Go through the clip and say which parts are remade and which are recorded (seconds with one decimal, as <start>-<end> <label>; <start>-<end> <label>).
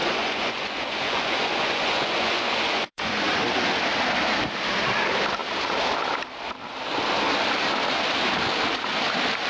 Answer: 0.0-3.4 remade; 3.4-9.5 recorded